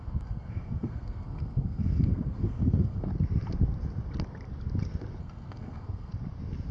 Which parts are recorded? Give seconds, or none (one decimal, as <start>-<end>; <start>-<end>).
3.1-5.2; 6.1-6.7